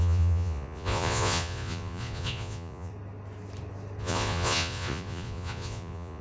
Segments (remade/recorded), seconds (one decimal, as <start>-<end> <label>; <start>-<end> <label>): 0.0-2.9 remade; 2.9-4.0 recorded; 4.0-6.2 remade